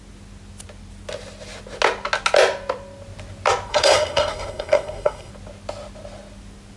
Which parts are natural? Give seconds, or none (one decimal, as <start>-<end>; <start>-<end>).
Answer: 0.0-3.7; 5.3-6.8